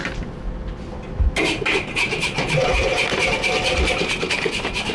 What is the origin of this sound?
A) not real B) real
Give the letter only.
B